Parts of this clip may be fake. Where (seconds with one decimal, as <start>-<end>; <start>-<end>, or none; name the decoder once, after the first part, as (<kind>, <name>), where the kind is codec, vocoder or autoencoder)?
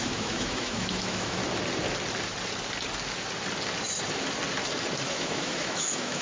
0.0-1.4 (autoencoder, DAC-VAE); 5.1-6.2